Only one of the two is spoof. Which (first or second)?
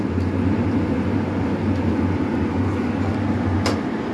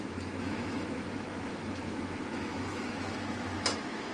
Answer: second